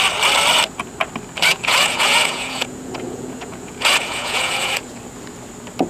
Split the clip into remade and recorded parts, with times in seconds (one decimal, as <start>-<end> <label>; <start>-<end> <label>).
0.0-1.5 recorded; 1.5-5.0 remade; 5.0-5.9 recorded